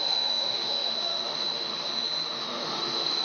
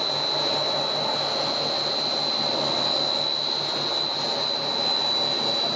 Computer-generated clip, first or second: first